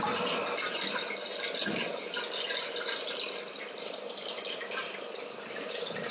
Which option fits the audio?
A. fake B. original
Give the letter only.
B